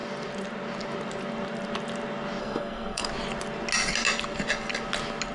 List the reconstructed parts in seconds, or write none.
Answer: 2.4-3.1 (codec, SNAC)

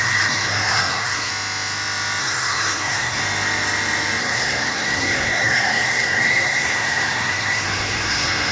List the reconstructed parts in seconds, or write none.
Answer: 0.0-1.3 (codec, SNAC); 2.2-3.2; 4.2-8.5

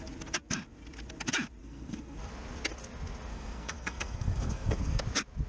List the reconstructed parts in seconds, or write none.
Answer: 1.6-2.3 (codec, SNAC); 3.3-5.0

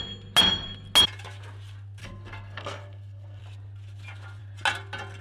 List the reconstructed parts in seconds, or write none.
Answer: 2.0-3.4 (codec, SNAC)